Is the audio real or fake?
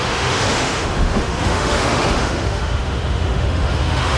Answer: fake